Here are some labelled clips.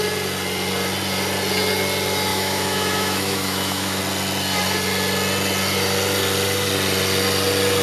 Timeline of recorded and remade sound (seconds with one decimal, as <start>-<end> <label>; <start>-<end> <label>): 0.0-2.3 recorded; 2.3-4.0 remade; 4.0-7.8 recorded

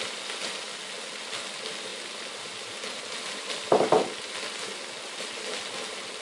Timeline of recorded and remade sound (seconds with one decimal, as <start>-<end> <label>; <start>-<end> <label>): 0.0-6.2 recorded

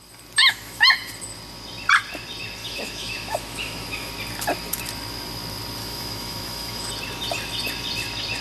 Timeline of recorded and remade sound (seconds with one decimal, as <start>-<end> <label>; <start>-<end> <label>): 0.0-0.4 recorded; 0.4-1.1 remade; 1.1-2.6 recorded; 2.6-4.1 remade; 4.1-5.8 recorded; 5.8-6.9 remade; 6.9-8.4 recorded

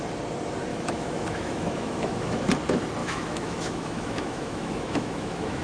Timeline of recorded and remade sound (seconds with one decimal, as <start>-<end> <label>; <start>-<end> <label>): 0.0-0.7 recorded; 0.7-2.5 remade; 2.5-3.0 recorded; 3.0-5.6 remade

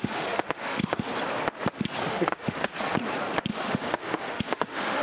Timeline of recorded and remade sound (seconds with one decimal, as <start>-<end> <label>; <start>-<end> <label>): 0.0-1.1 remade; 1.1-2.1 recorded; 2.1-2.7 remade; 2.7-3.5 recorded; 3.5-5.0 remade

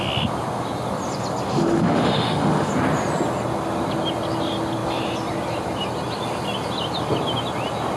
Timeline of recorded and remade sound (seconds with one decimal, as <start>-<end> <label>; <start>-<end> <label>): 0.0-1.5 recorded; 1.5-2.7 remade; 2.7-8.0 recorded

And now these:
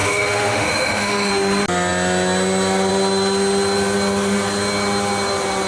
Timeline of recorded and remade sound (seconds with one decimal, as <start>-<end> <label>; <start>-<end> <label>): 0.0-1.3 remade; 1.3-5.7 recorded